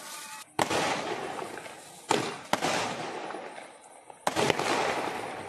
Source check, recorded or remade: recorded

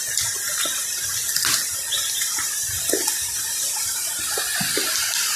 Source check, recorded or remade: recorded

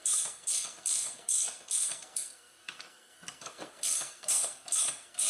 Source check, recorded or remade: remade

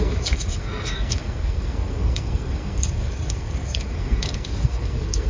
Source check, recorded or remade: remade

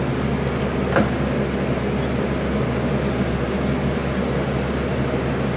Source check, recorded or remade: recorded